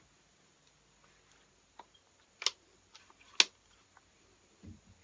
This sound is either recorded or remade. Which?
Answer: recorded